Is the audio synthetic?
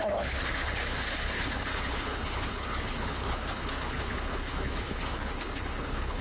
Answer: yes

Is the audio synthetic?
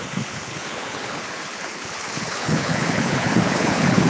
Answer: yes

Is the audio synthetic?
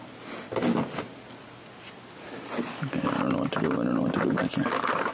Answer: no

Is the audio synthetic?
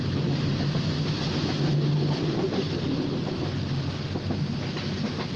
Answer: no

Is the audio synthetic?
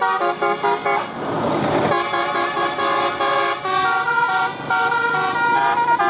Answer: no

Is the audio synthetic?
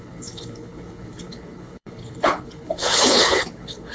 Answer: yes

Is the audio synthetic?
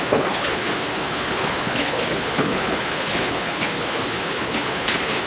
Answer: yes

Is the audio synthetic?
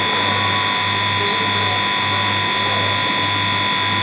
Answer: no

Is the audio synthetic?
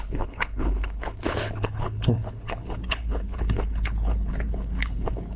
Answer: yes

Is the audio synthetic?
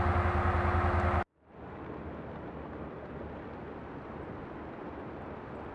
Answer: no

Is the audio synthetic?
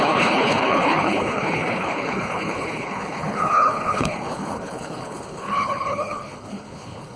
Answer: yes